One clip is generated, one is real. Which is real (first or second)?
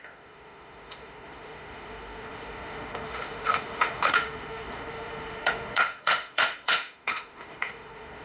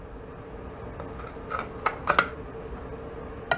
second